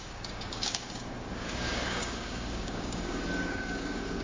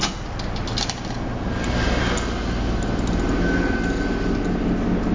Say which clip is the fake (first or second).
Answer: first